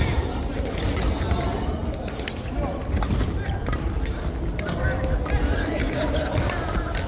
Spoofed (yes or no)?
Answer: no